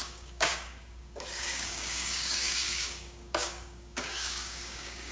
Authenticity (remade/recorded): remade